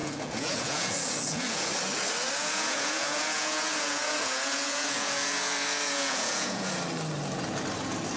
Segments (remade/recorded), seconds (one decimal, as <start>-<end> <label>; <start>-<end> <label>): 0.0-1.7 remade; 1.7-2.4 recorded; 2.4-6.7 remade; 6.7-8.2 recorded